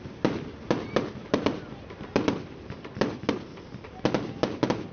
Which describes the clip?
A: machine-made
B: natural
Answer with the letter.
B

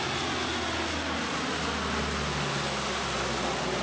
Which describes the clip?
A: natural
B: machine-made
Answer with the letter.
A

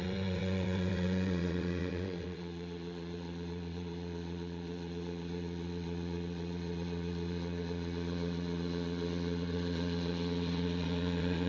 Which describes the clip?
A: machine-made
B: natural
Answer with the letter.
A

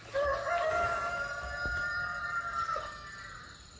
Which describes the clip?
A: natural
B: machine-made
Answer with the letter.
A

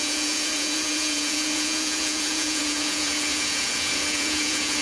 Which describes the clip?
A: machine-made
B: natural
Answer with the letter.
A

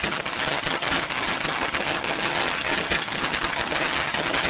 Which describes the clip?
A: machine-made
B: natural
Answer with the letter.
A